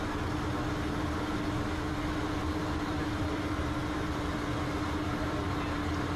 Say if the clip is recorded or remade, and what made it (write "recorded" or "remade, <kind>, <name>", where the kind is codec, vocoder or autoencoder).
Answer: recorded